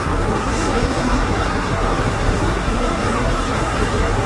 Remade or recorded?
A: remade